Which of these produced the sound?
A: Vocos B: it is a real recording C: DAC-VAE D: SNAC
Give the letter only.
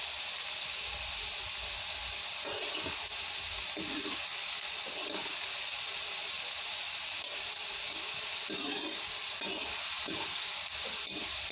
B